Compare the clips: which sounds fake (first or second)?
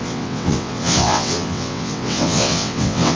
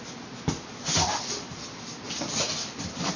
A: first